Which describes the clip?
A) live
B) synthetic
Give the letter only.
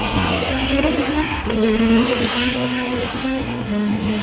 B